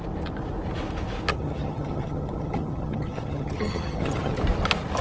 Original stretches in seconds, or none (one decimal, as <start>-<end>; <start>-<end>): 0.0-1.3; 4.3-5.0